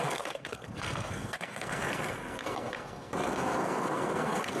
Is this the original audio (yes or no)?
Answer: no